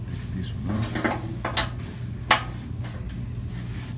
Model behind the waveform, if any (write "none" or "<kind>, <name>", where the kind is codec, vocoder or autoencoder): none